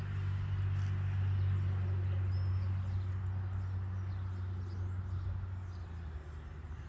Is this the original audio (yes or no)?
yes